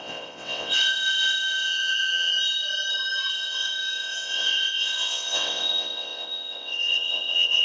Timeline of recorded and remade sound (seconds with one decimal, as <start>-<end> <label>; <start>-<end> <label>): 0.0-2.3 remade; 2.3-3.3 recorded; 3.3-7.6 remade